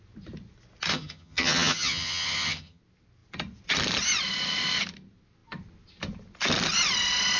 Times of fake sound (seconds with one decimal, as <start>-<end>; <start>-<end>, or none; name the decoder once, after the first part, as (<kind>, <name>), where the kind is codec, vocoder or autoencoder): 0.9-2.8 (vocoder, HiFi-GAN)